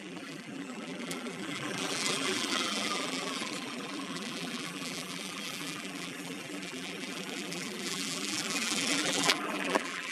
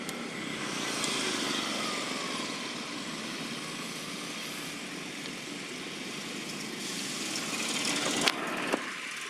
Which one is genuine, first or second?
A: second